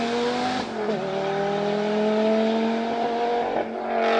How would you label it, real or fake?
real